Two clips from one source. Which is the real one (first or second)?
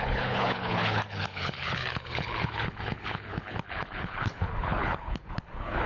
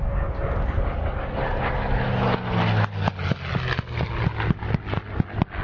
second